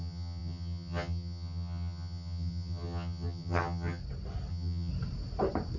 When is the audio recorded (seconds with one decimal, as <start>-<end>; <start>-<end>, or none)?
4.0-4.5; 4.9-5.8